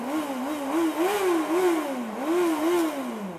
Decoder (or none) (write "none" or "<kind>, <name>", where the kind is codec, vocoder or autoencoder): none